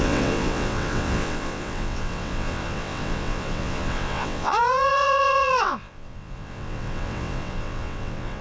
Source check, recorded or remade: remade